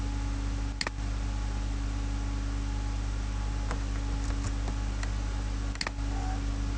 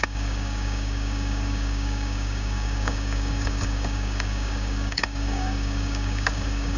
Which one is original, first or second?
first